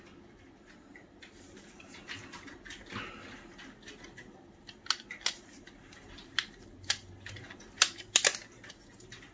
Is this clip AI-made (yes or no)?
no